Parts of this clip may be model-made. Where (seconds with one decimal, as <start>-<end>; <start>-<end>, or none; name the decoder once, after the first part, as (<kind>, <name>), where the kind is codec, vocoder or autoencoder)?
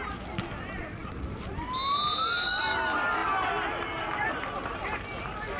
none